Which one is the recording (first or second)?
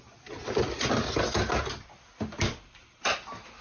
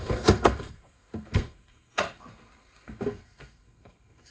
first